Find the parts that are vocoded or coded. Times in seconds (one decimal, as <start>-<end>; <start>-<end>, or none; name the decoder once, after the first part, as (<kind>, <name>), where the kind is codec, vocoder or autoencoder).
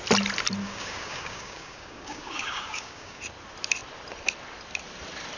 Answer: 0.6-3.2 (codec, DAC)